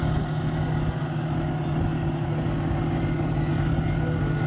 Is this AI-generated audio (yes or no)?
no